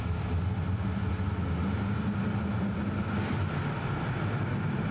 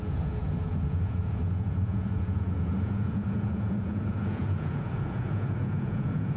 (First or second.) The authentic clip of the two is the first